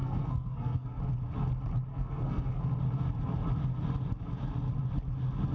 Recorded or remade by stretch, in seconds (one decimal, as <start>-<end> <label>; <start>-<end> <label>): 0.0-1.0 remade; 1.0-1.9 recorded; 1.9-2.6 remade; 2.6-5.5 recorded